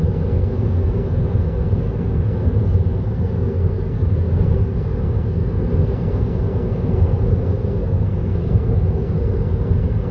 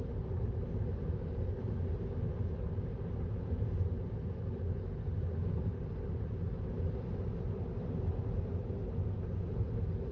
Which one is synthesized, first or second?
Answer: first